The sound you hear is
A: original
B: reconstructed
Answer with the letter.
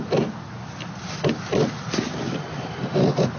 A